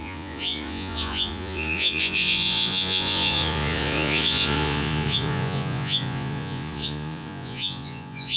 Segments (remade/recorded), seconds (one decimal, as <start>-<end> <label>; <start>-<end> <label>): 0.0-8.4 remade